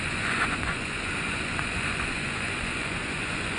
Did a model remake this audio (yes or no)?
yes